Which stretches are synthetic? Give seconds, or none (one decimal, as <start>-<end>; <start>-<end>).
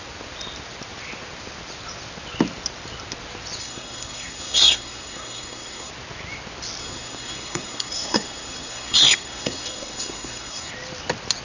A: 3.6-5.9; 6.8-10.7